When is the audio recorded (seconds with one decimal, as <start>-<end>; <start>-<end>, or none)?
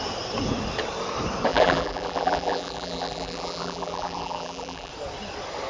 0.0-1.5; 4.9-5.7